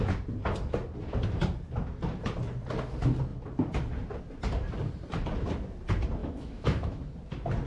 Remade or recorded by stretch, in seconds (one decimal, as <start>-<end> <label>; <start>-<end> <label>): 0.0-6.2 recorded; 6.2-7.0 remade; 7.0-7.7 recorded